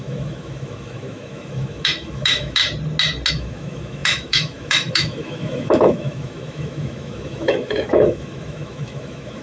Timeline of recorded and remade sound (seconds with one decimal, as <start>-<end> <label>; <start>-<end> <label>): 0.0-2.6 remade; 2.6-3.3 recorded; 3.3-9.4 remade